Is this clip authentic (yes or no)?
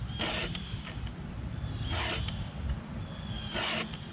yes